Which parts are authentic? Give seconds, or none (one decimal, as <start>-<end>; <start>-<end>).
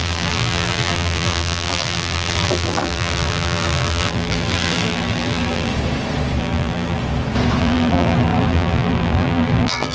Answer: 5.7-6.4; 7.0-7.6